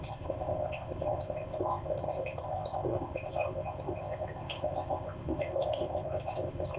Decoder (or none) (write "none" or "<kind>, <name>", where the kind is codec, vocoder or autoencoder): codec, ZipCodec